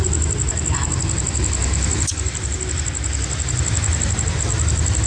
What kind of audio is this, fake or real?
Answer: real